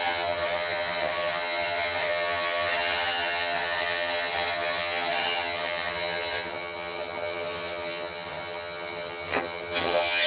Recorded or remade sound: remade